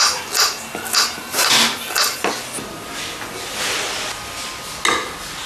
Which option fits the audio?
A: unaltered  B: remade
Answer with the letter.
A